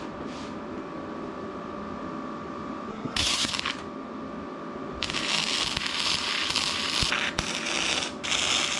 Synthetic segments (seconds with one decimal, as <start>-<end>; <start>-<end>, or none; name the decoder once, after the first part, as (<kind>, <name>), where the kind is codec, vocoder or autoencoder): 2.9-3.5 (codec, SNAC)